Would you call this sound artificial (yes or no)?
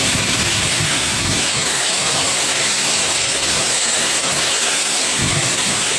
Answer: yes